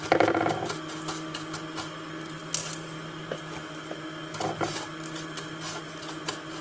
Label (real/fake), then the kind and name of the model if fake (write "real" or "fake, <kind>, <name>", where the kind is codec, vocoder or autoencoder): real